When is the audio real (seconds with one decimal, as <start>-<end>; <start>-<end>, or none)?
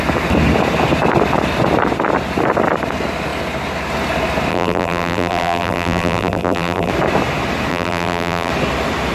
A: 0.0-4.5; 6.9-7.7; 8.5-9.1